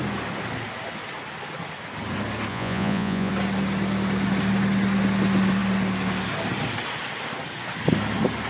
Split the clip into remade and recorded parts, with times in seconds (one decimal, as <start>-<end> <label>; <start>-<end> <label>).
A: 0.0-2.5 recorded; 2.5-3.3 remade; 3.3-8.5 recorded